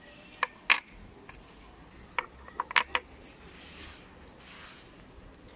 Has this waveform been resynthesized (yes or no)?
no